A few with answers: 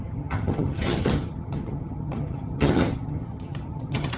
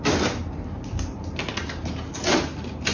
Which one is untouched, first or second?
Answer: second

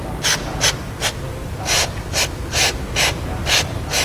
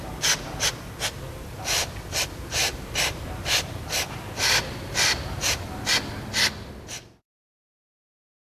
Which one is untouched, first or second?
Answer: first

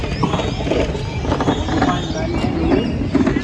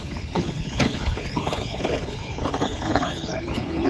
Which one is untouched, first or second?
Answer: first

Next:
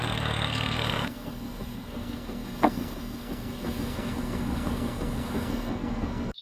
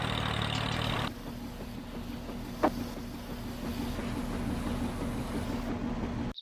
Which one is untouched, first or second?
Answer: second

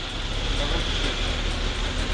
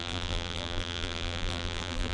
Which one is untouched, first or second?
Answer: first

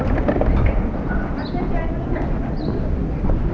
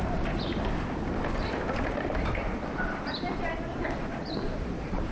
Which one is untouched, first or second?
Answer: first